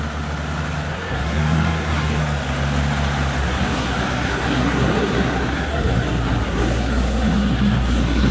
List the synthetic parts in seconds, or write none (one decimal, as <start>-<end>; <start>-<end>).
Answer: 0.9-2.2; 3.4-8.3